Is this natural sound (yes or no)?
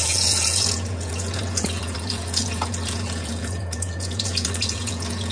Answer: no